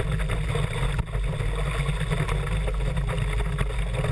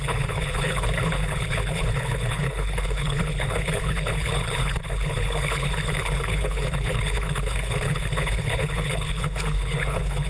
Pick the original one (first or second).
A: first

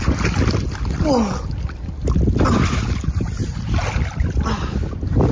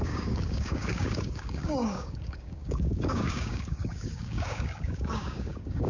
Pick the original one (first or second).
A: first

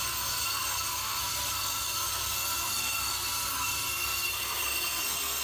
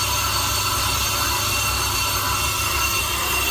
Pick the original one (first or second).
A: second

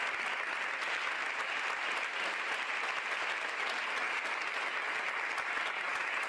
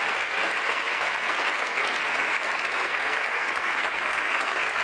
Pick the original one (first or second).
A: first